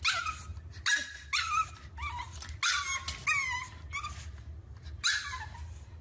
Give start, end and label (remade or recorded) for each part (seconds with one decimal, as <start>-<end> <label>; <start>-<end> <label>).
0.0-6.0 recorded

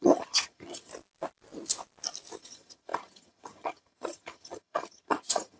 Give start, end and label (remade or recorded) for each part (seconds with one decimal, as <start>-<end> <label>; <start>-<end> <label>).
0.0-0.9 remade; 0.9-2.4 recorded; 2.4-5.6 remade

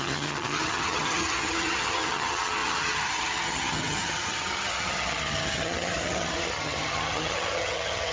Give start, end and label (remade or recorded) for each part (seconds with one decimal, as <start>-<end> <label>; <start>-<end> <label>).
0.0-8.1 remade

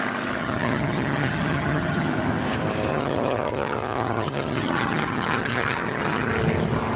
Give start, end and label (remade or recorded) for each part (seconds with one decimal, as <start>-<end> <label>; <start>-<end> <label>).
0.0-0.4 recorded; 0.4-2.1 remade; 2.1-2.9 recorded; 2.9-6.3 remade; 6.3-7.0 recorded

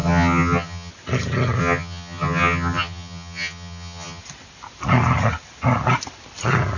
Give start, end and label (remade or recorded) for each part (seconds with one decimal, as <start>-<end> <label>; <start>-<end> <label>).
0.0-0.9 remade; 0.9-1.6 recorded; 1.6-4.2 remade; 4.2-6.8 recorded

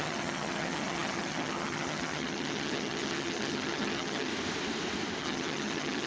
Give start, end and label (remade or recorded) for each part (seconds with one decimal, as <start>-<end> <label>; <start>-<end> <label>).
0.0-4.3 remade; 4.3-5.2 recorded; 5.2-6.1 remade

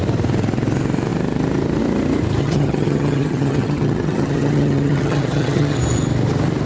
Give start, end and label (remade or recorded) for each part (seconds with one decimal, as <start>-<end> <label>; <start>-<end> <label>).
0.0-2.4 recorded; 2.4-5.8 remade; 5.8-6.7 recorded